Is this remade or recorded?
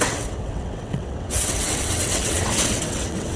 remade